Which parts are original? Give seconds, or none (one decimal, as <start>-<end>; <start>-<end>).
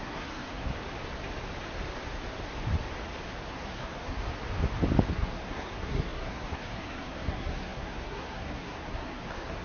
0.7-3.5; 4.2-5.1